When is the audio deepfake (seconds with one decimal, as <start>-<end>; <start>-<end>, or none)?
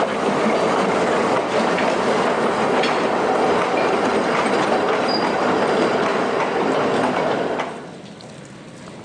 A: none